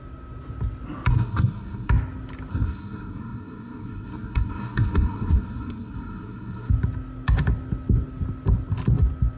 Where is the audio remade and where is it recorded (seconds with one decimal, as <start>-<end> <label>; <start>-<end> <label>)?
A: 0.0-1.1 recorded; 1.1-1.9 remade; 1.9-2.5 recorded; 2.5-6.7 remade; 6.7-9.4 recorded